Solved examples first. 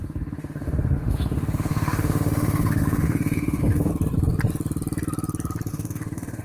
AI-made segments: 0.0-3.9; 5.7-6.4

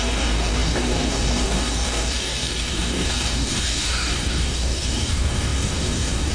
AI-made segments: 0.0-6.3

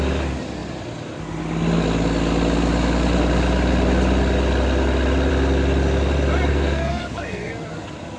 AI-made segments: 6.5-7.5

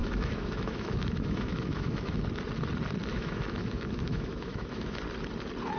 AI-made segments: 0.0-2.2; 3.1-5.0

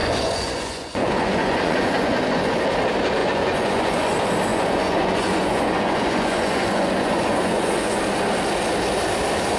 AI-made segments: 0.0-2.5; 3.2-4.1; 4.5-8.0

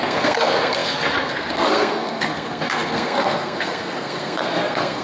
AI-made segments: 0.0-5.0

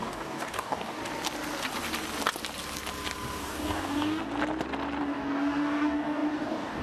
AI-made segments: 0.0-1.0; 3.4-4.2; 5.0-6.8